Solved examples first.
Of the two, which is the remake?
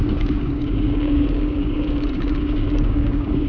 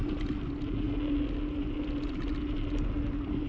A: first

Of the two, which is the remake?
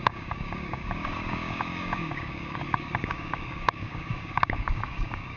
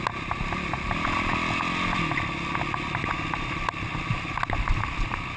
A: first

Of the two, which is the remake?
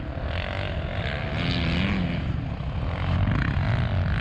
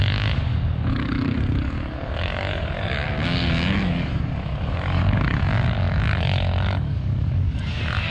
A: second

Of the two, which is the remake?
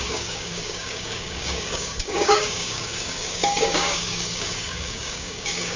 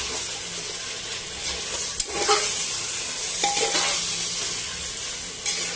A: first